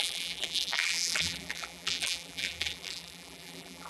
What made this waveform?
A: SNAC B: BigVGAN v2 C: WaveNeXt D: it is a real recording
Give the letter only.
B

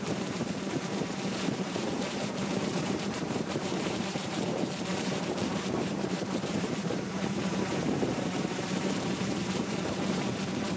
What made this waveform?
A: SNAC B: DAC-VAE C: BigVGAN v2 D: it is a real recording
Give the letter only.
C